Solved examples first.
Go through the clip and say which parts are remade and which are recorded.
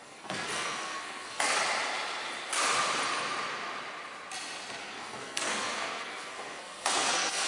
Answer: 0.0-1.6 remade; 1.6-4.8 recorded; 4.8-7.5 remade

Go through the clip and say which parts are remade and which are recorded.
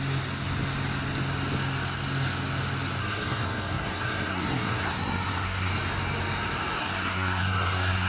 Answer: 0.0-3.0 recorded; 3.0-5.7 remade; 5.7-6.8 recorded; 6.8-8.1 remade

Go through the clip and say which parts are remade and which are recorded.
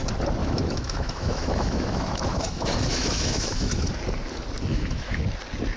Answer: 0.0-0.4 recorded; 0.4-3.9 remade; 3.9-4.7 recorded; 4.7-5.2 remade; 5.2-5.8 recorded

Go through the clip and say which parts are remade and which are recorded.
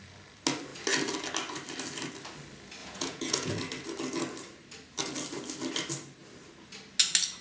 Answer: 0.0-2.8 recorded; 2.8-3.5 remade; 3.5-7.4 recorded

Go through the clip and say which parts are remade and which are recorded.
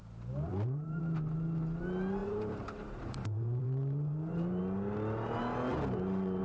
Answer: 0.0-0.5 recorded; 0.5-1.0 remade; 1.0-2.2 recorded; 2.2-4.6 remade; 4.6-5.7 recorded; 5.7-6.4 remade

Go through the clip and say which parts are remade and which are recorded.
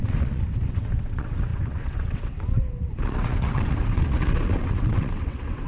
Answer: 0.0-5.7 remade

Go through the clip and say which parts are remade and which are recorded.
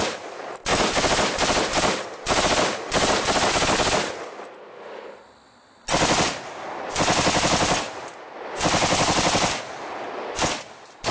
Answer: 0.0-11.1 recorded